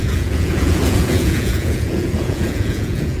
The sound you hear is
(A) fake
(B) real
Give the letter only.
A